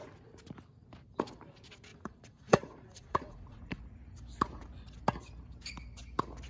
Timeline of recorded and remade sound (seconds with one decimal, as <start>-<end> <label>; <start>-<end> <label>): 0.0-1.9 recorded; 1.9-3.8 remade; 3.8-6.5 recorded